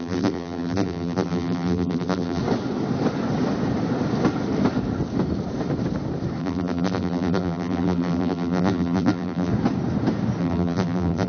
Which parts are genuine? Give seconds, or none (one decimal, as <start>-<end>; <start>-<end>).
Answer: 2.4-6.4; 9.5-10.4